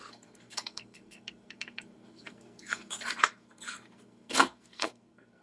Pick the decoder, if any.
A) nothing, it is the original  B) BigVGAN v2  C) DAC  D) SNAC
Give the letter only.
D